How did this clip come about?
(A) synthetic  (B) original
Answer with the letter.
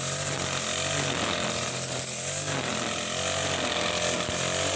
B